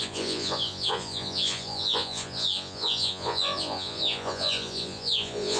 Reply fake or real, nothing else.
fake